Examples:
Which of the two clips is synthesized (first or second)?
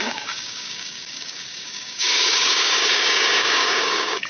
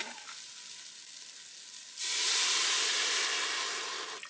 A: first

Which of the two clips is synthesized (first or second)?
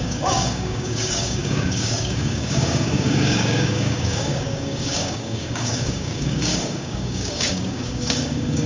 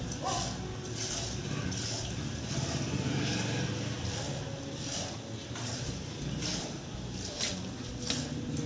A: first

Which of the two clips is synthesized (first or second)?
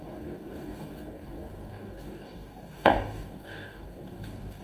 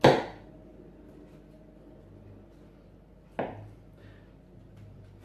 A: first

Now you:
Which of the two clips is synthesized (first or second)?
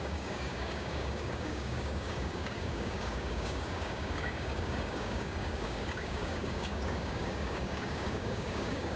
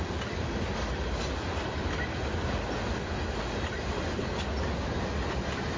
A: first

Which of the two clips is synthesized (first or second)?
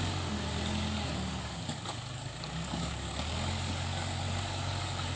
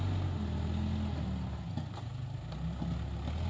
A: first